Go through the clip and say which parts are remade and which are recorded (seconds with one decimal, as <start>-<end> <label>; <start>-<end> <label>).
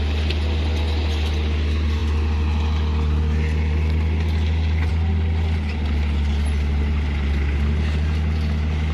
0.0-8.9 recorded